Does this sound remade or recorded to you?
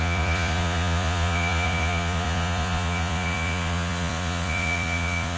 remade